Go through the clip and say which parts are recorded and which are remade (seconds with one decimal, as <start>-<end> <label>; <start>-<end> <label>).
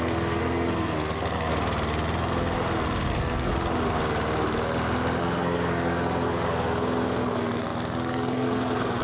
0.0-1.5 remade; 1.5-3.1 recorded; 3.1-3.5 remade; 3.5-5.2 recorded; 5.2-9.0 remade